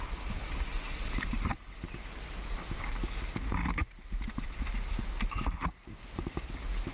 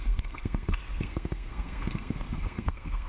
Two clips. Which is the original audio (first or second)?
first